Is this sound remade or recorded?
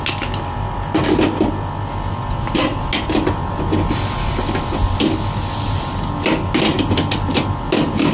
recorded